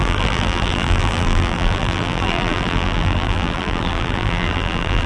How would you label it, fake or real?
fake